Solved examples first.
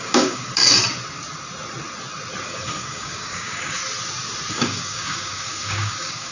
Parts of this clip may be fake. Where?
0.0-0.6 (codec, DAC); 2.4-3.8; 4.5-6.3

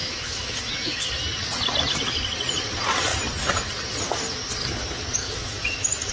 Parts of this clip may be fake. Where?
0.0-1.1 (autoencoder, DAC-VAE); 5.2-6.1

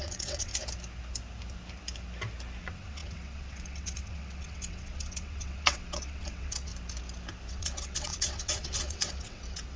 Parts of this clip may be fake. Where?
0.0-0.5 (vocoder, WaveNeXt); 2.6-6.7; 7.5-9.8

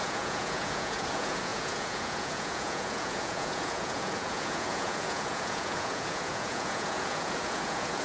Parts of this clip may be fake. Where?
0.0-8.0 (vocoder, Vocos)